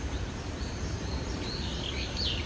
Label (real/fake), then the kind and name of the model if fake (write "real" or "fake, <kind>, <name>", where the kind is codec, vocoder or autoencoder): real